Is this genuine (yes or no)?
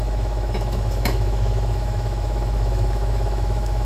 no